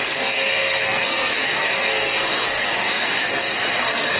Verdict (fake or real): fake